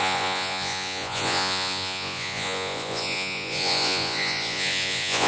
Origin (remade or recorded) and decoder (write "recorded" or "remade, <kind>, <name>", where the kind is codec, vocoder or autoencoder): remade, vocoder, Vocos